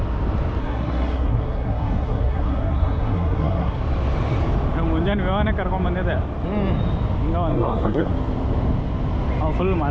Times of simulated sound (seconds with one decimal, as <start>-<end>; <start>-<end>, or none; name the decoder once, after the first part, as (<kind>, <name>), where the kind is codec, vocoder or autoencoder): 0.6-3.8 (codec, SNAC); 7.5-8.1